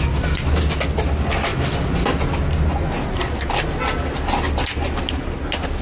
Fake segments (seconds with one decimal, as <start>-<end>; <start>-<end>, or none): none